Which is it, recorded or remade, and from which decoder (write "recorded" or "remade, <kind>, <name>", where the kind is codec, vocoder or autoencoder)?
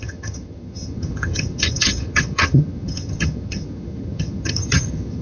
remade, vocoder, HiFi-GAN